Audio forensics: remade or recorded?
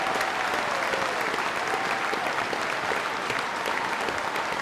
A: recorded